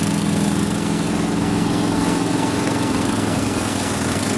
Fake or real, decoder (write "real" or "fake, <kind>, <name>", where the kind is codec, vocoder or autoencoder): fake, codec, SNAC